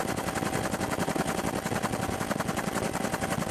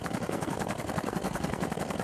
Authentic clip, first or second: first